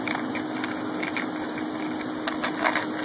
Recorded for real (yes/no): yes